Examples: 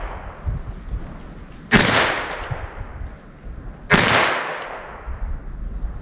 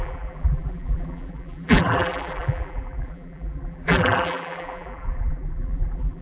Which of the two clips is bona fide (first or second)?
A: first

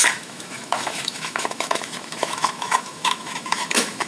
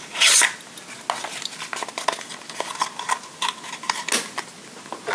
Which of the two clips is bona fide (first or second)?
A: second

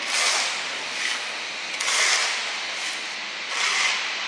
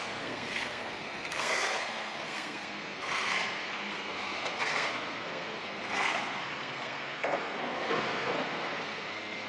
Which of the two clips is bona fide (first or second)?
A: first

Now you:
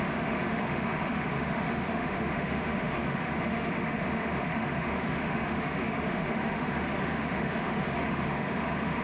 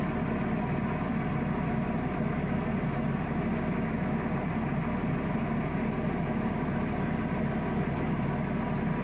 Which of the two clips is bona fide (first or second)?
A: second